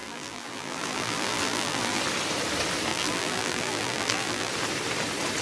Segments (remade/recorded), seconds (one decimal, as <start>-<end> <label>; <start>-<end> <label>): 0.0-2.0 remade; 2.0-2.9 recorded; 2.9-4.5 remade; 4.5-5.4 recorded